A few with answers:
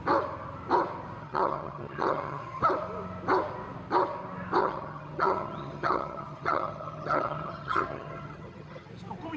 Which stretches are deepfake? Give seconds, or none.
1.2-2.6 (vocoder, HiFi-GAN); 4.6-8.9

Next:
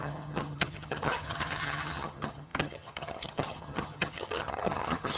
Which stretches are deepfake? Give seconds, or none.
0.0-5.2 (vocoder, HiFi-GAN)